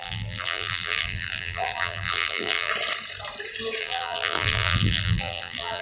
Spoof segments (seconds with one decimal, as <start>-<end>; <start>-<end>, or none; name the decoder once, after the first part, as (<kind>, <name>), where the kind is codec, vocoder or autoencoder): 0.0-2.7 (vocoder, BigVGAN v2); 3.8-5.8